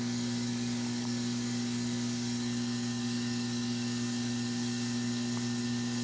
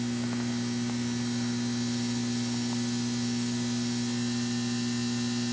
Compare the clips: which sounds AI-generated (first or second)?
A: first